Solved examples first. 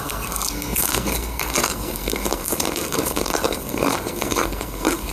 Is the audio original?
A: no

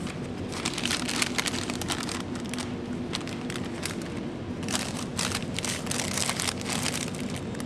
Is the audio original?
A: yes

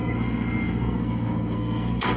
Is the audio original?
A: no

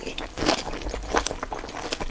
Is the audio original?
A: yes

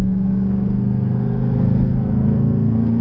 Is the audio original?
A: no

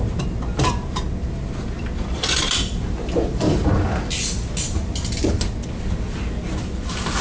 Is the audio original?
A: yes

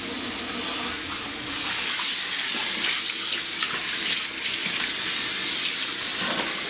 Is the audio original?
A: yes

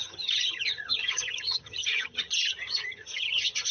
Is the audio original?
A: no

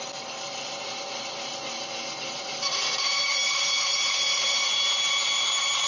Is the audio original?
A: yes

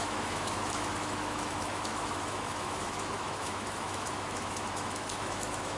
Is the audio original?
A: no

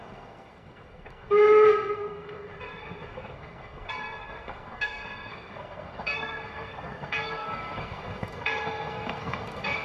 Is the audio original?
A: no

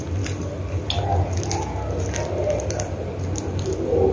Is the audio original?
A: yes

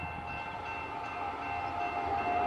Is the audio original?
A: yes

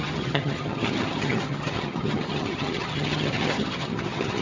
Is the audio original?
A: no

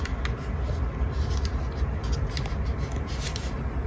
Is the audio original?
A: yes